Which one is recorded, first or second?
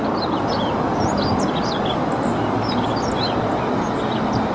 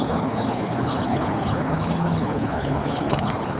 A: first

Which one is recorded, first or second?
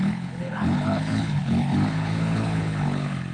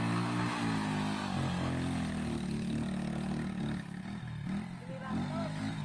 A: second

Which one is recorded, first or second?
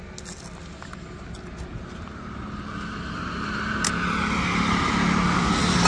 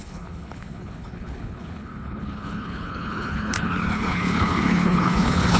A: first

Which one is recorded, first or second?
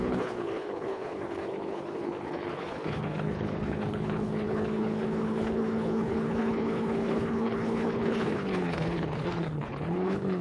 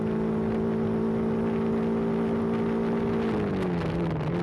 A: second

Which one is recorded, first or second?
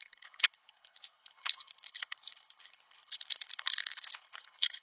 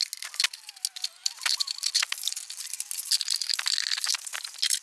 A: second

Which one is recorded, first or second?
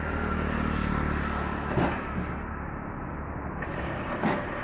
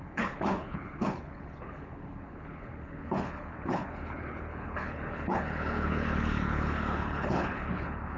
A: first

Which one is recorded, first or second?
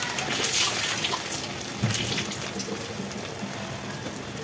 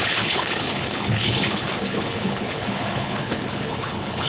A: first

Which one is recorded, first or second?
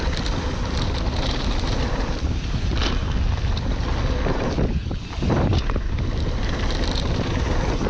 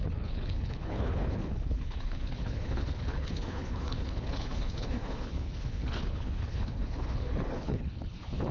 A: first